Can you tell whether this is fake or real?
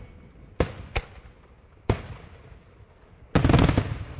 real